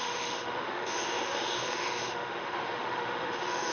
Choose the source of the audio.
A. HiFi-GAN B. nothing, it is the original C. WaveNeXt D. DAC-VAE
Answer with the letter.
D